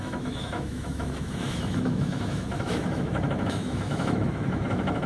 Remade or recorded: remade